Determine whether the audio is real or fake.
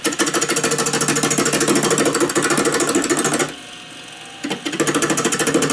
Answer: real